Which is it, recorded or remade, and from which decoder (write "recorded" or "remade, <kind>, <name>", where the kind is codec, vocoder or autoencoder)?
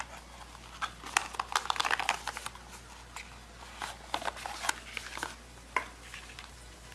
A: recorded